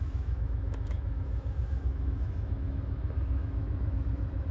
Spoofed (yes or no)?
yes